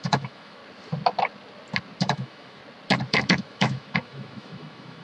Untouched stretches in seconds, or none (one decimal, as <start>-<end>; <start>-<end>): 0.6-2.0; 2.6-3.1